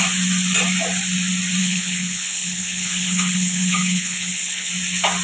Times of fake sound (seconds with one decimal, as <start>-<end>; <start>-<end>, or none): 1.6-4.7